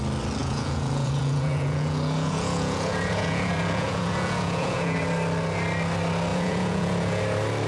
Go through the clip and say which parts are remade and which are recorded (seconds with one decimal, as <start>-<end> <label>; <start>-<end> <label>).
0.0-0.4 recorded; 0.4-5.0 remade; 5.0-6.3 recorded; 6.3-7.2 remade; 7.2-7.7 recorded